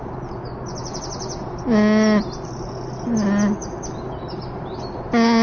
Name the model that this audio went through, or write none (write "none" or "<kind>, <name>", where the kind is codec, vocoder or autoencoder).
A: none